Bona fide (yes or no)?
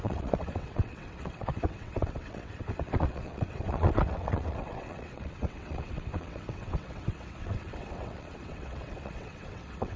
no